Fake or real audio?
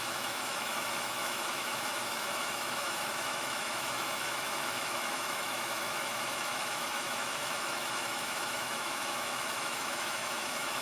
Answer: fake